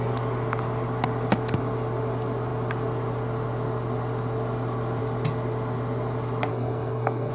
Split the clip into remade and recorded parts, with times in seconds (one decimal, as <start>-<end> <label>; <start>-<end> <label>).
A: 0.0-6.5 recorded; 6.5-7.3 remade